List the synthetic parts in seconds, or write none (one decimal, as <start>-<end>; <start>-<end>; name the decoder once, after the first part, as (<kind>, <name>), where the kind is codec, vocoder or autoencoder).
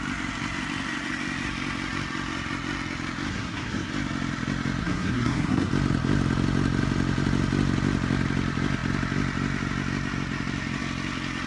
3.3-3.9 (codec, SNAC); 4.8-5.7